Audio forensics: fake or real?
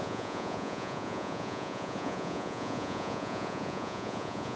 fake